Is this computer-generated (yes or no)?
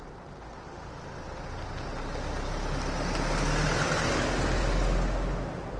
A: no